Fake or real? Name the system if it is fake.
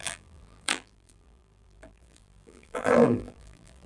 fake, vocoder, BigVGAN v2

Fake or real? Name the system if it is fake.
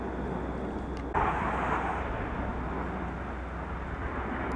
real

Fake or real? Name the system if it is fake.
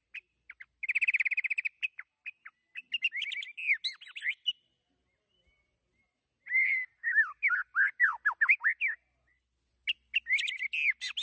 real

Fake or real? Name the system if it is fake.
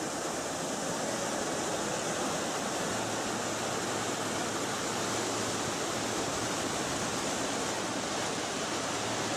real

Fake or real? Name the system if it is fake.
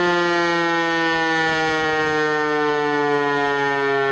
real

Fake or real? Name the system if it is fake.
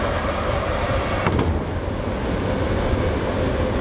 real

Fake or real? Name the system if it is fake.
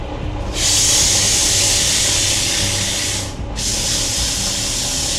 real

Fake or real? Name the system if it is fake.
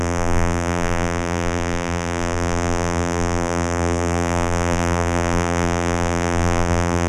fake, vocoder, BigVGAN v2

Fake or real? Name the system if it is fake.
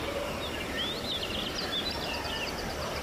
real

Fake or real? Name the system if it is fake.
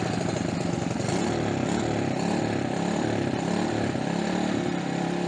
fake, vocoder, BigVGAN v2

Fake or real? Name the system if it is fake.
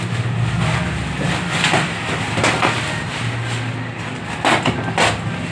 real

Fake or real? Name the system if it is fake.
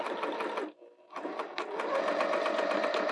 fake, vocoder, BigVGAN v2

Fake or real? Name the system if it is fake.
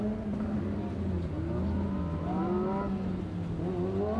real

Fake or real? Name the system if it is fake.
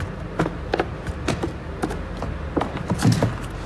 real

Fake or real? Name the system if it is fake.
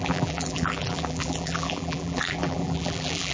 fake, vocoder, BigVGAN v2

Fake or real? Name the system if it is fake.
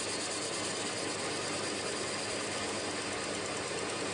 real